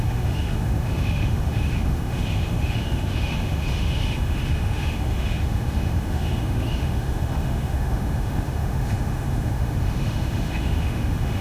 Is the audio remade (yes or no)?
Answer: yes